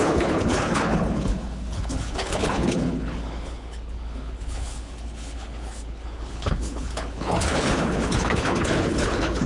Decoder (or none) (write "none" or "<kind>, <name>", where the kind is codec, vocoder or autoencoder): codec, HILCodec